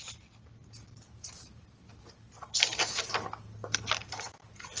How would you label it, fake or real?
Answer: real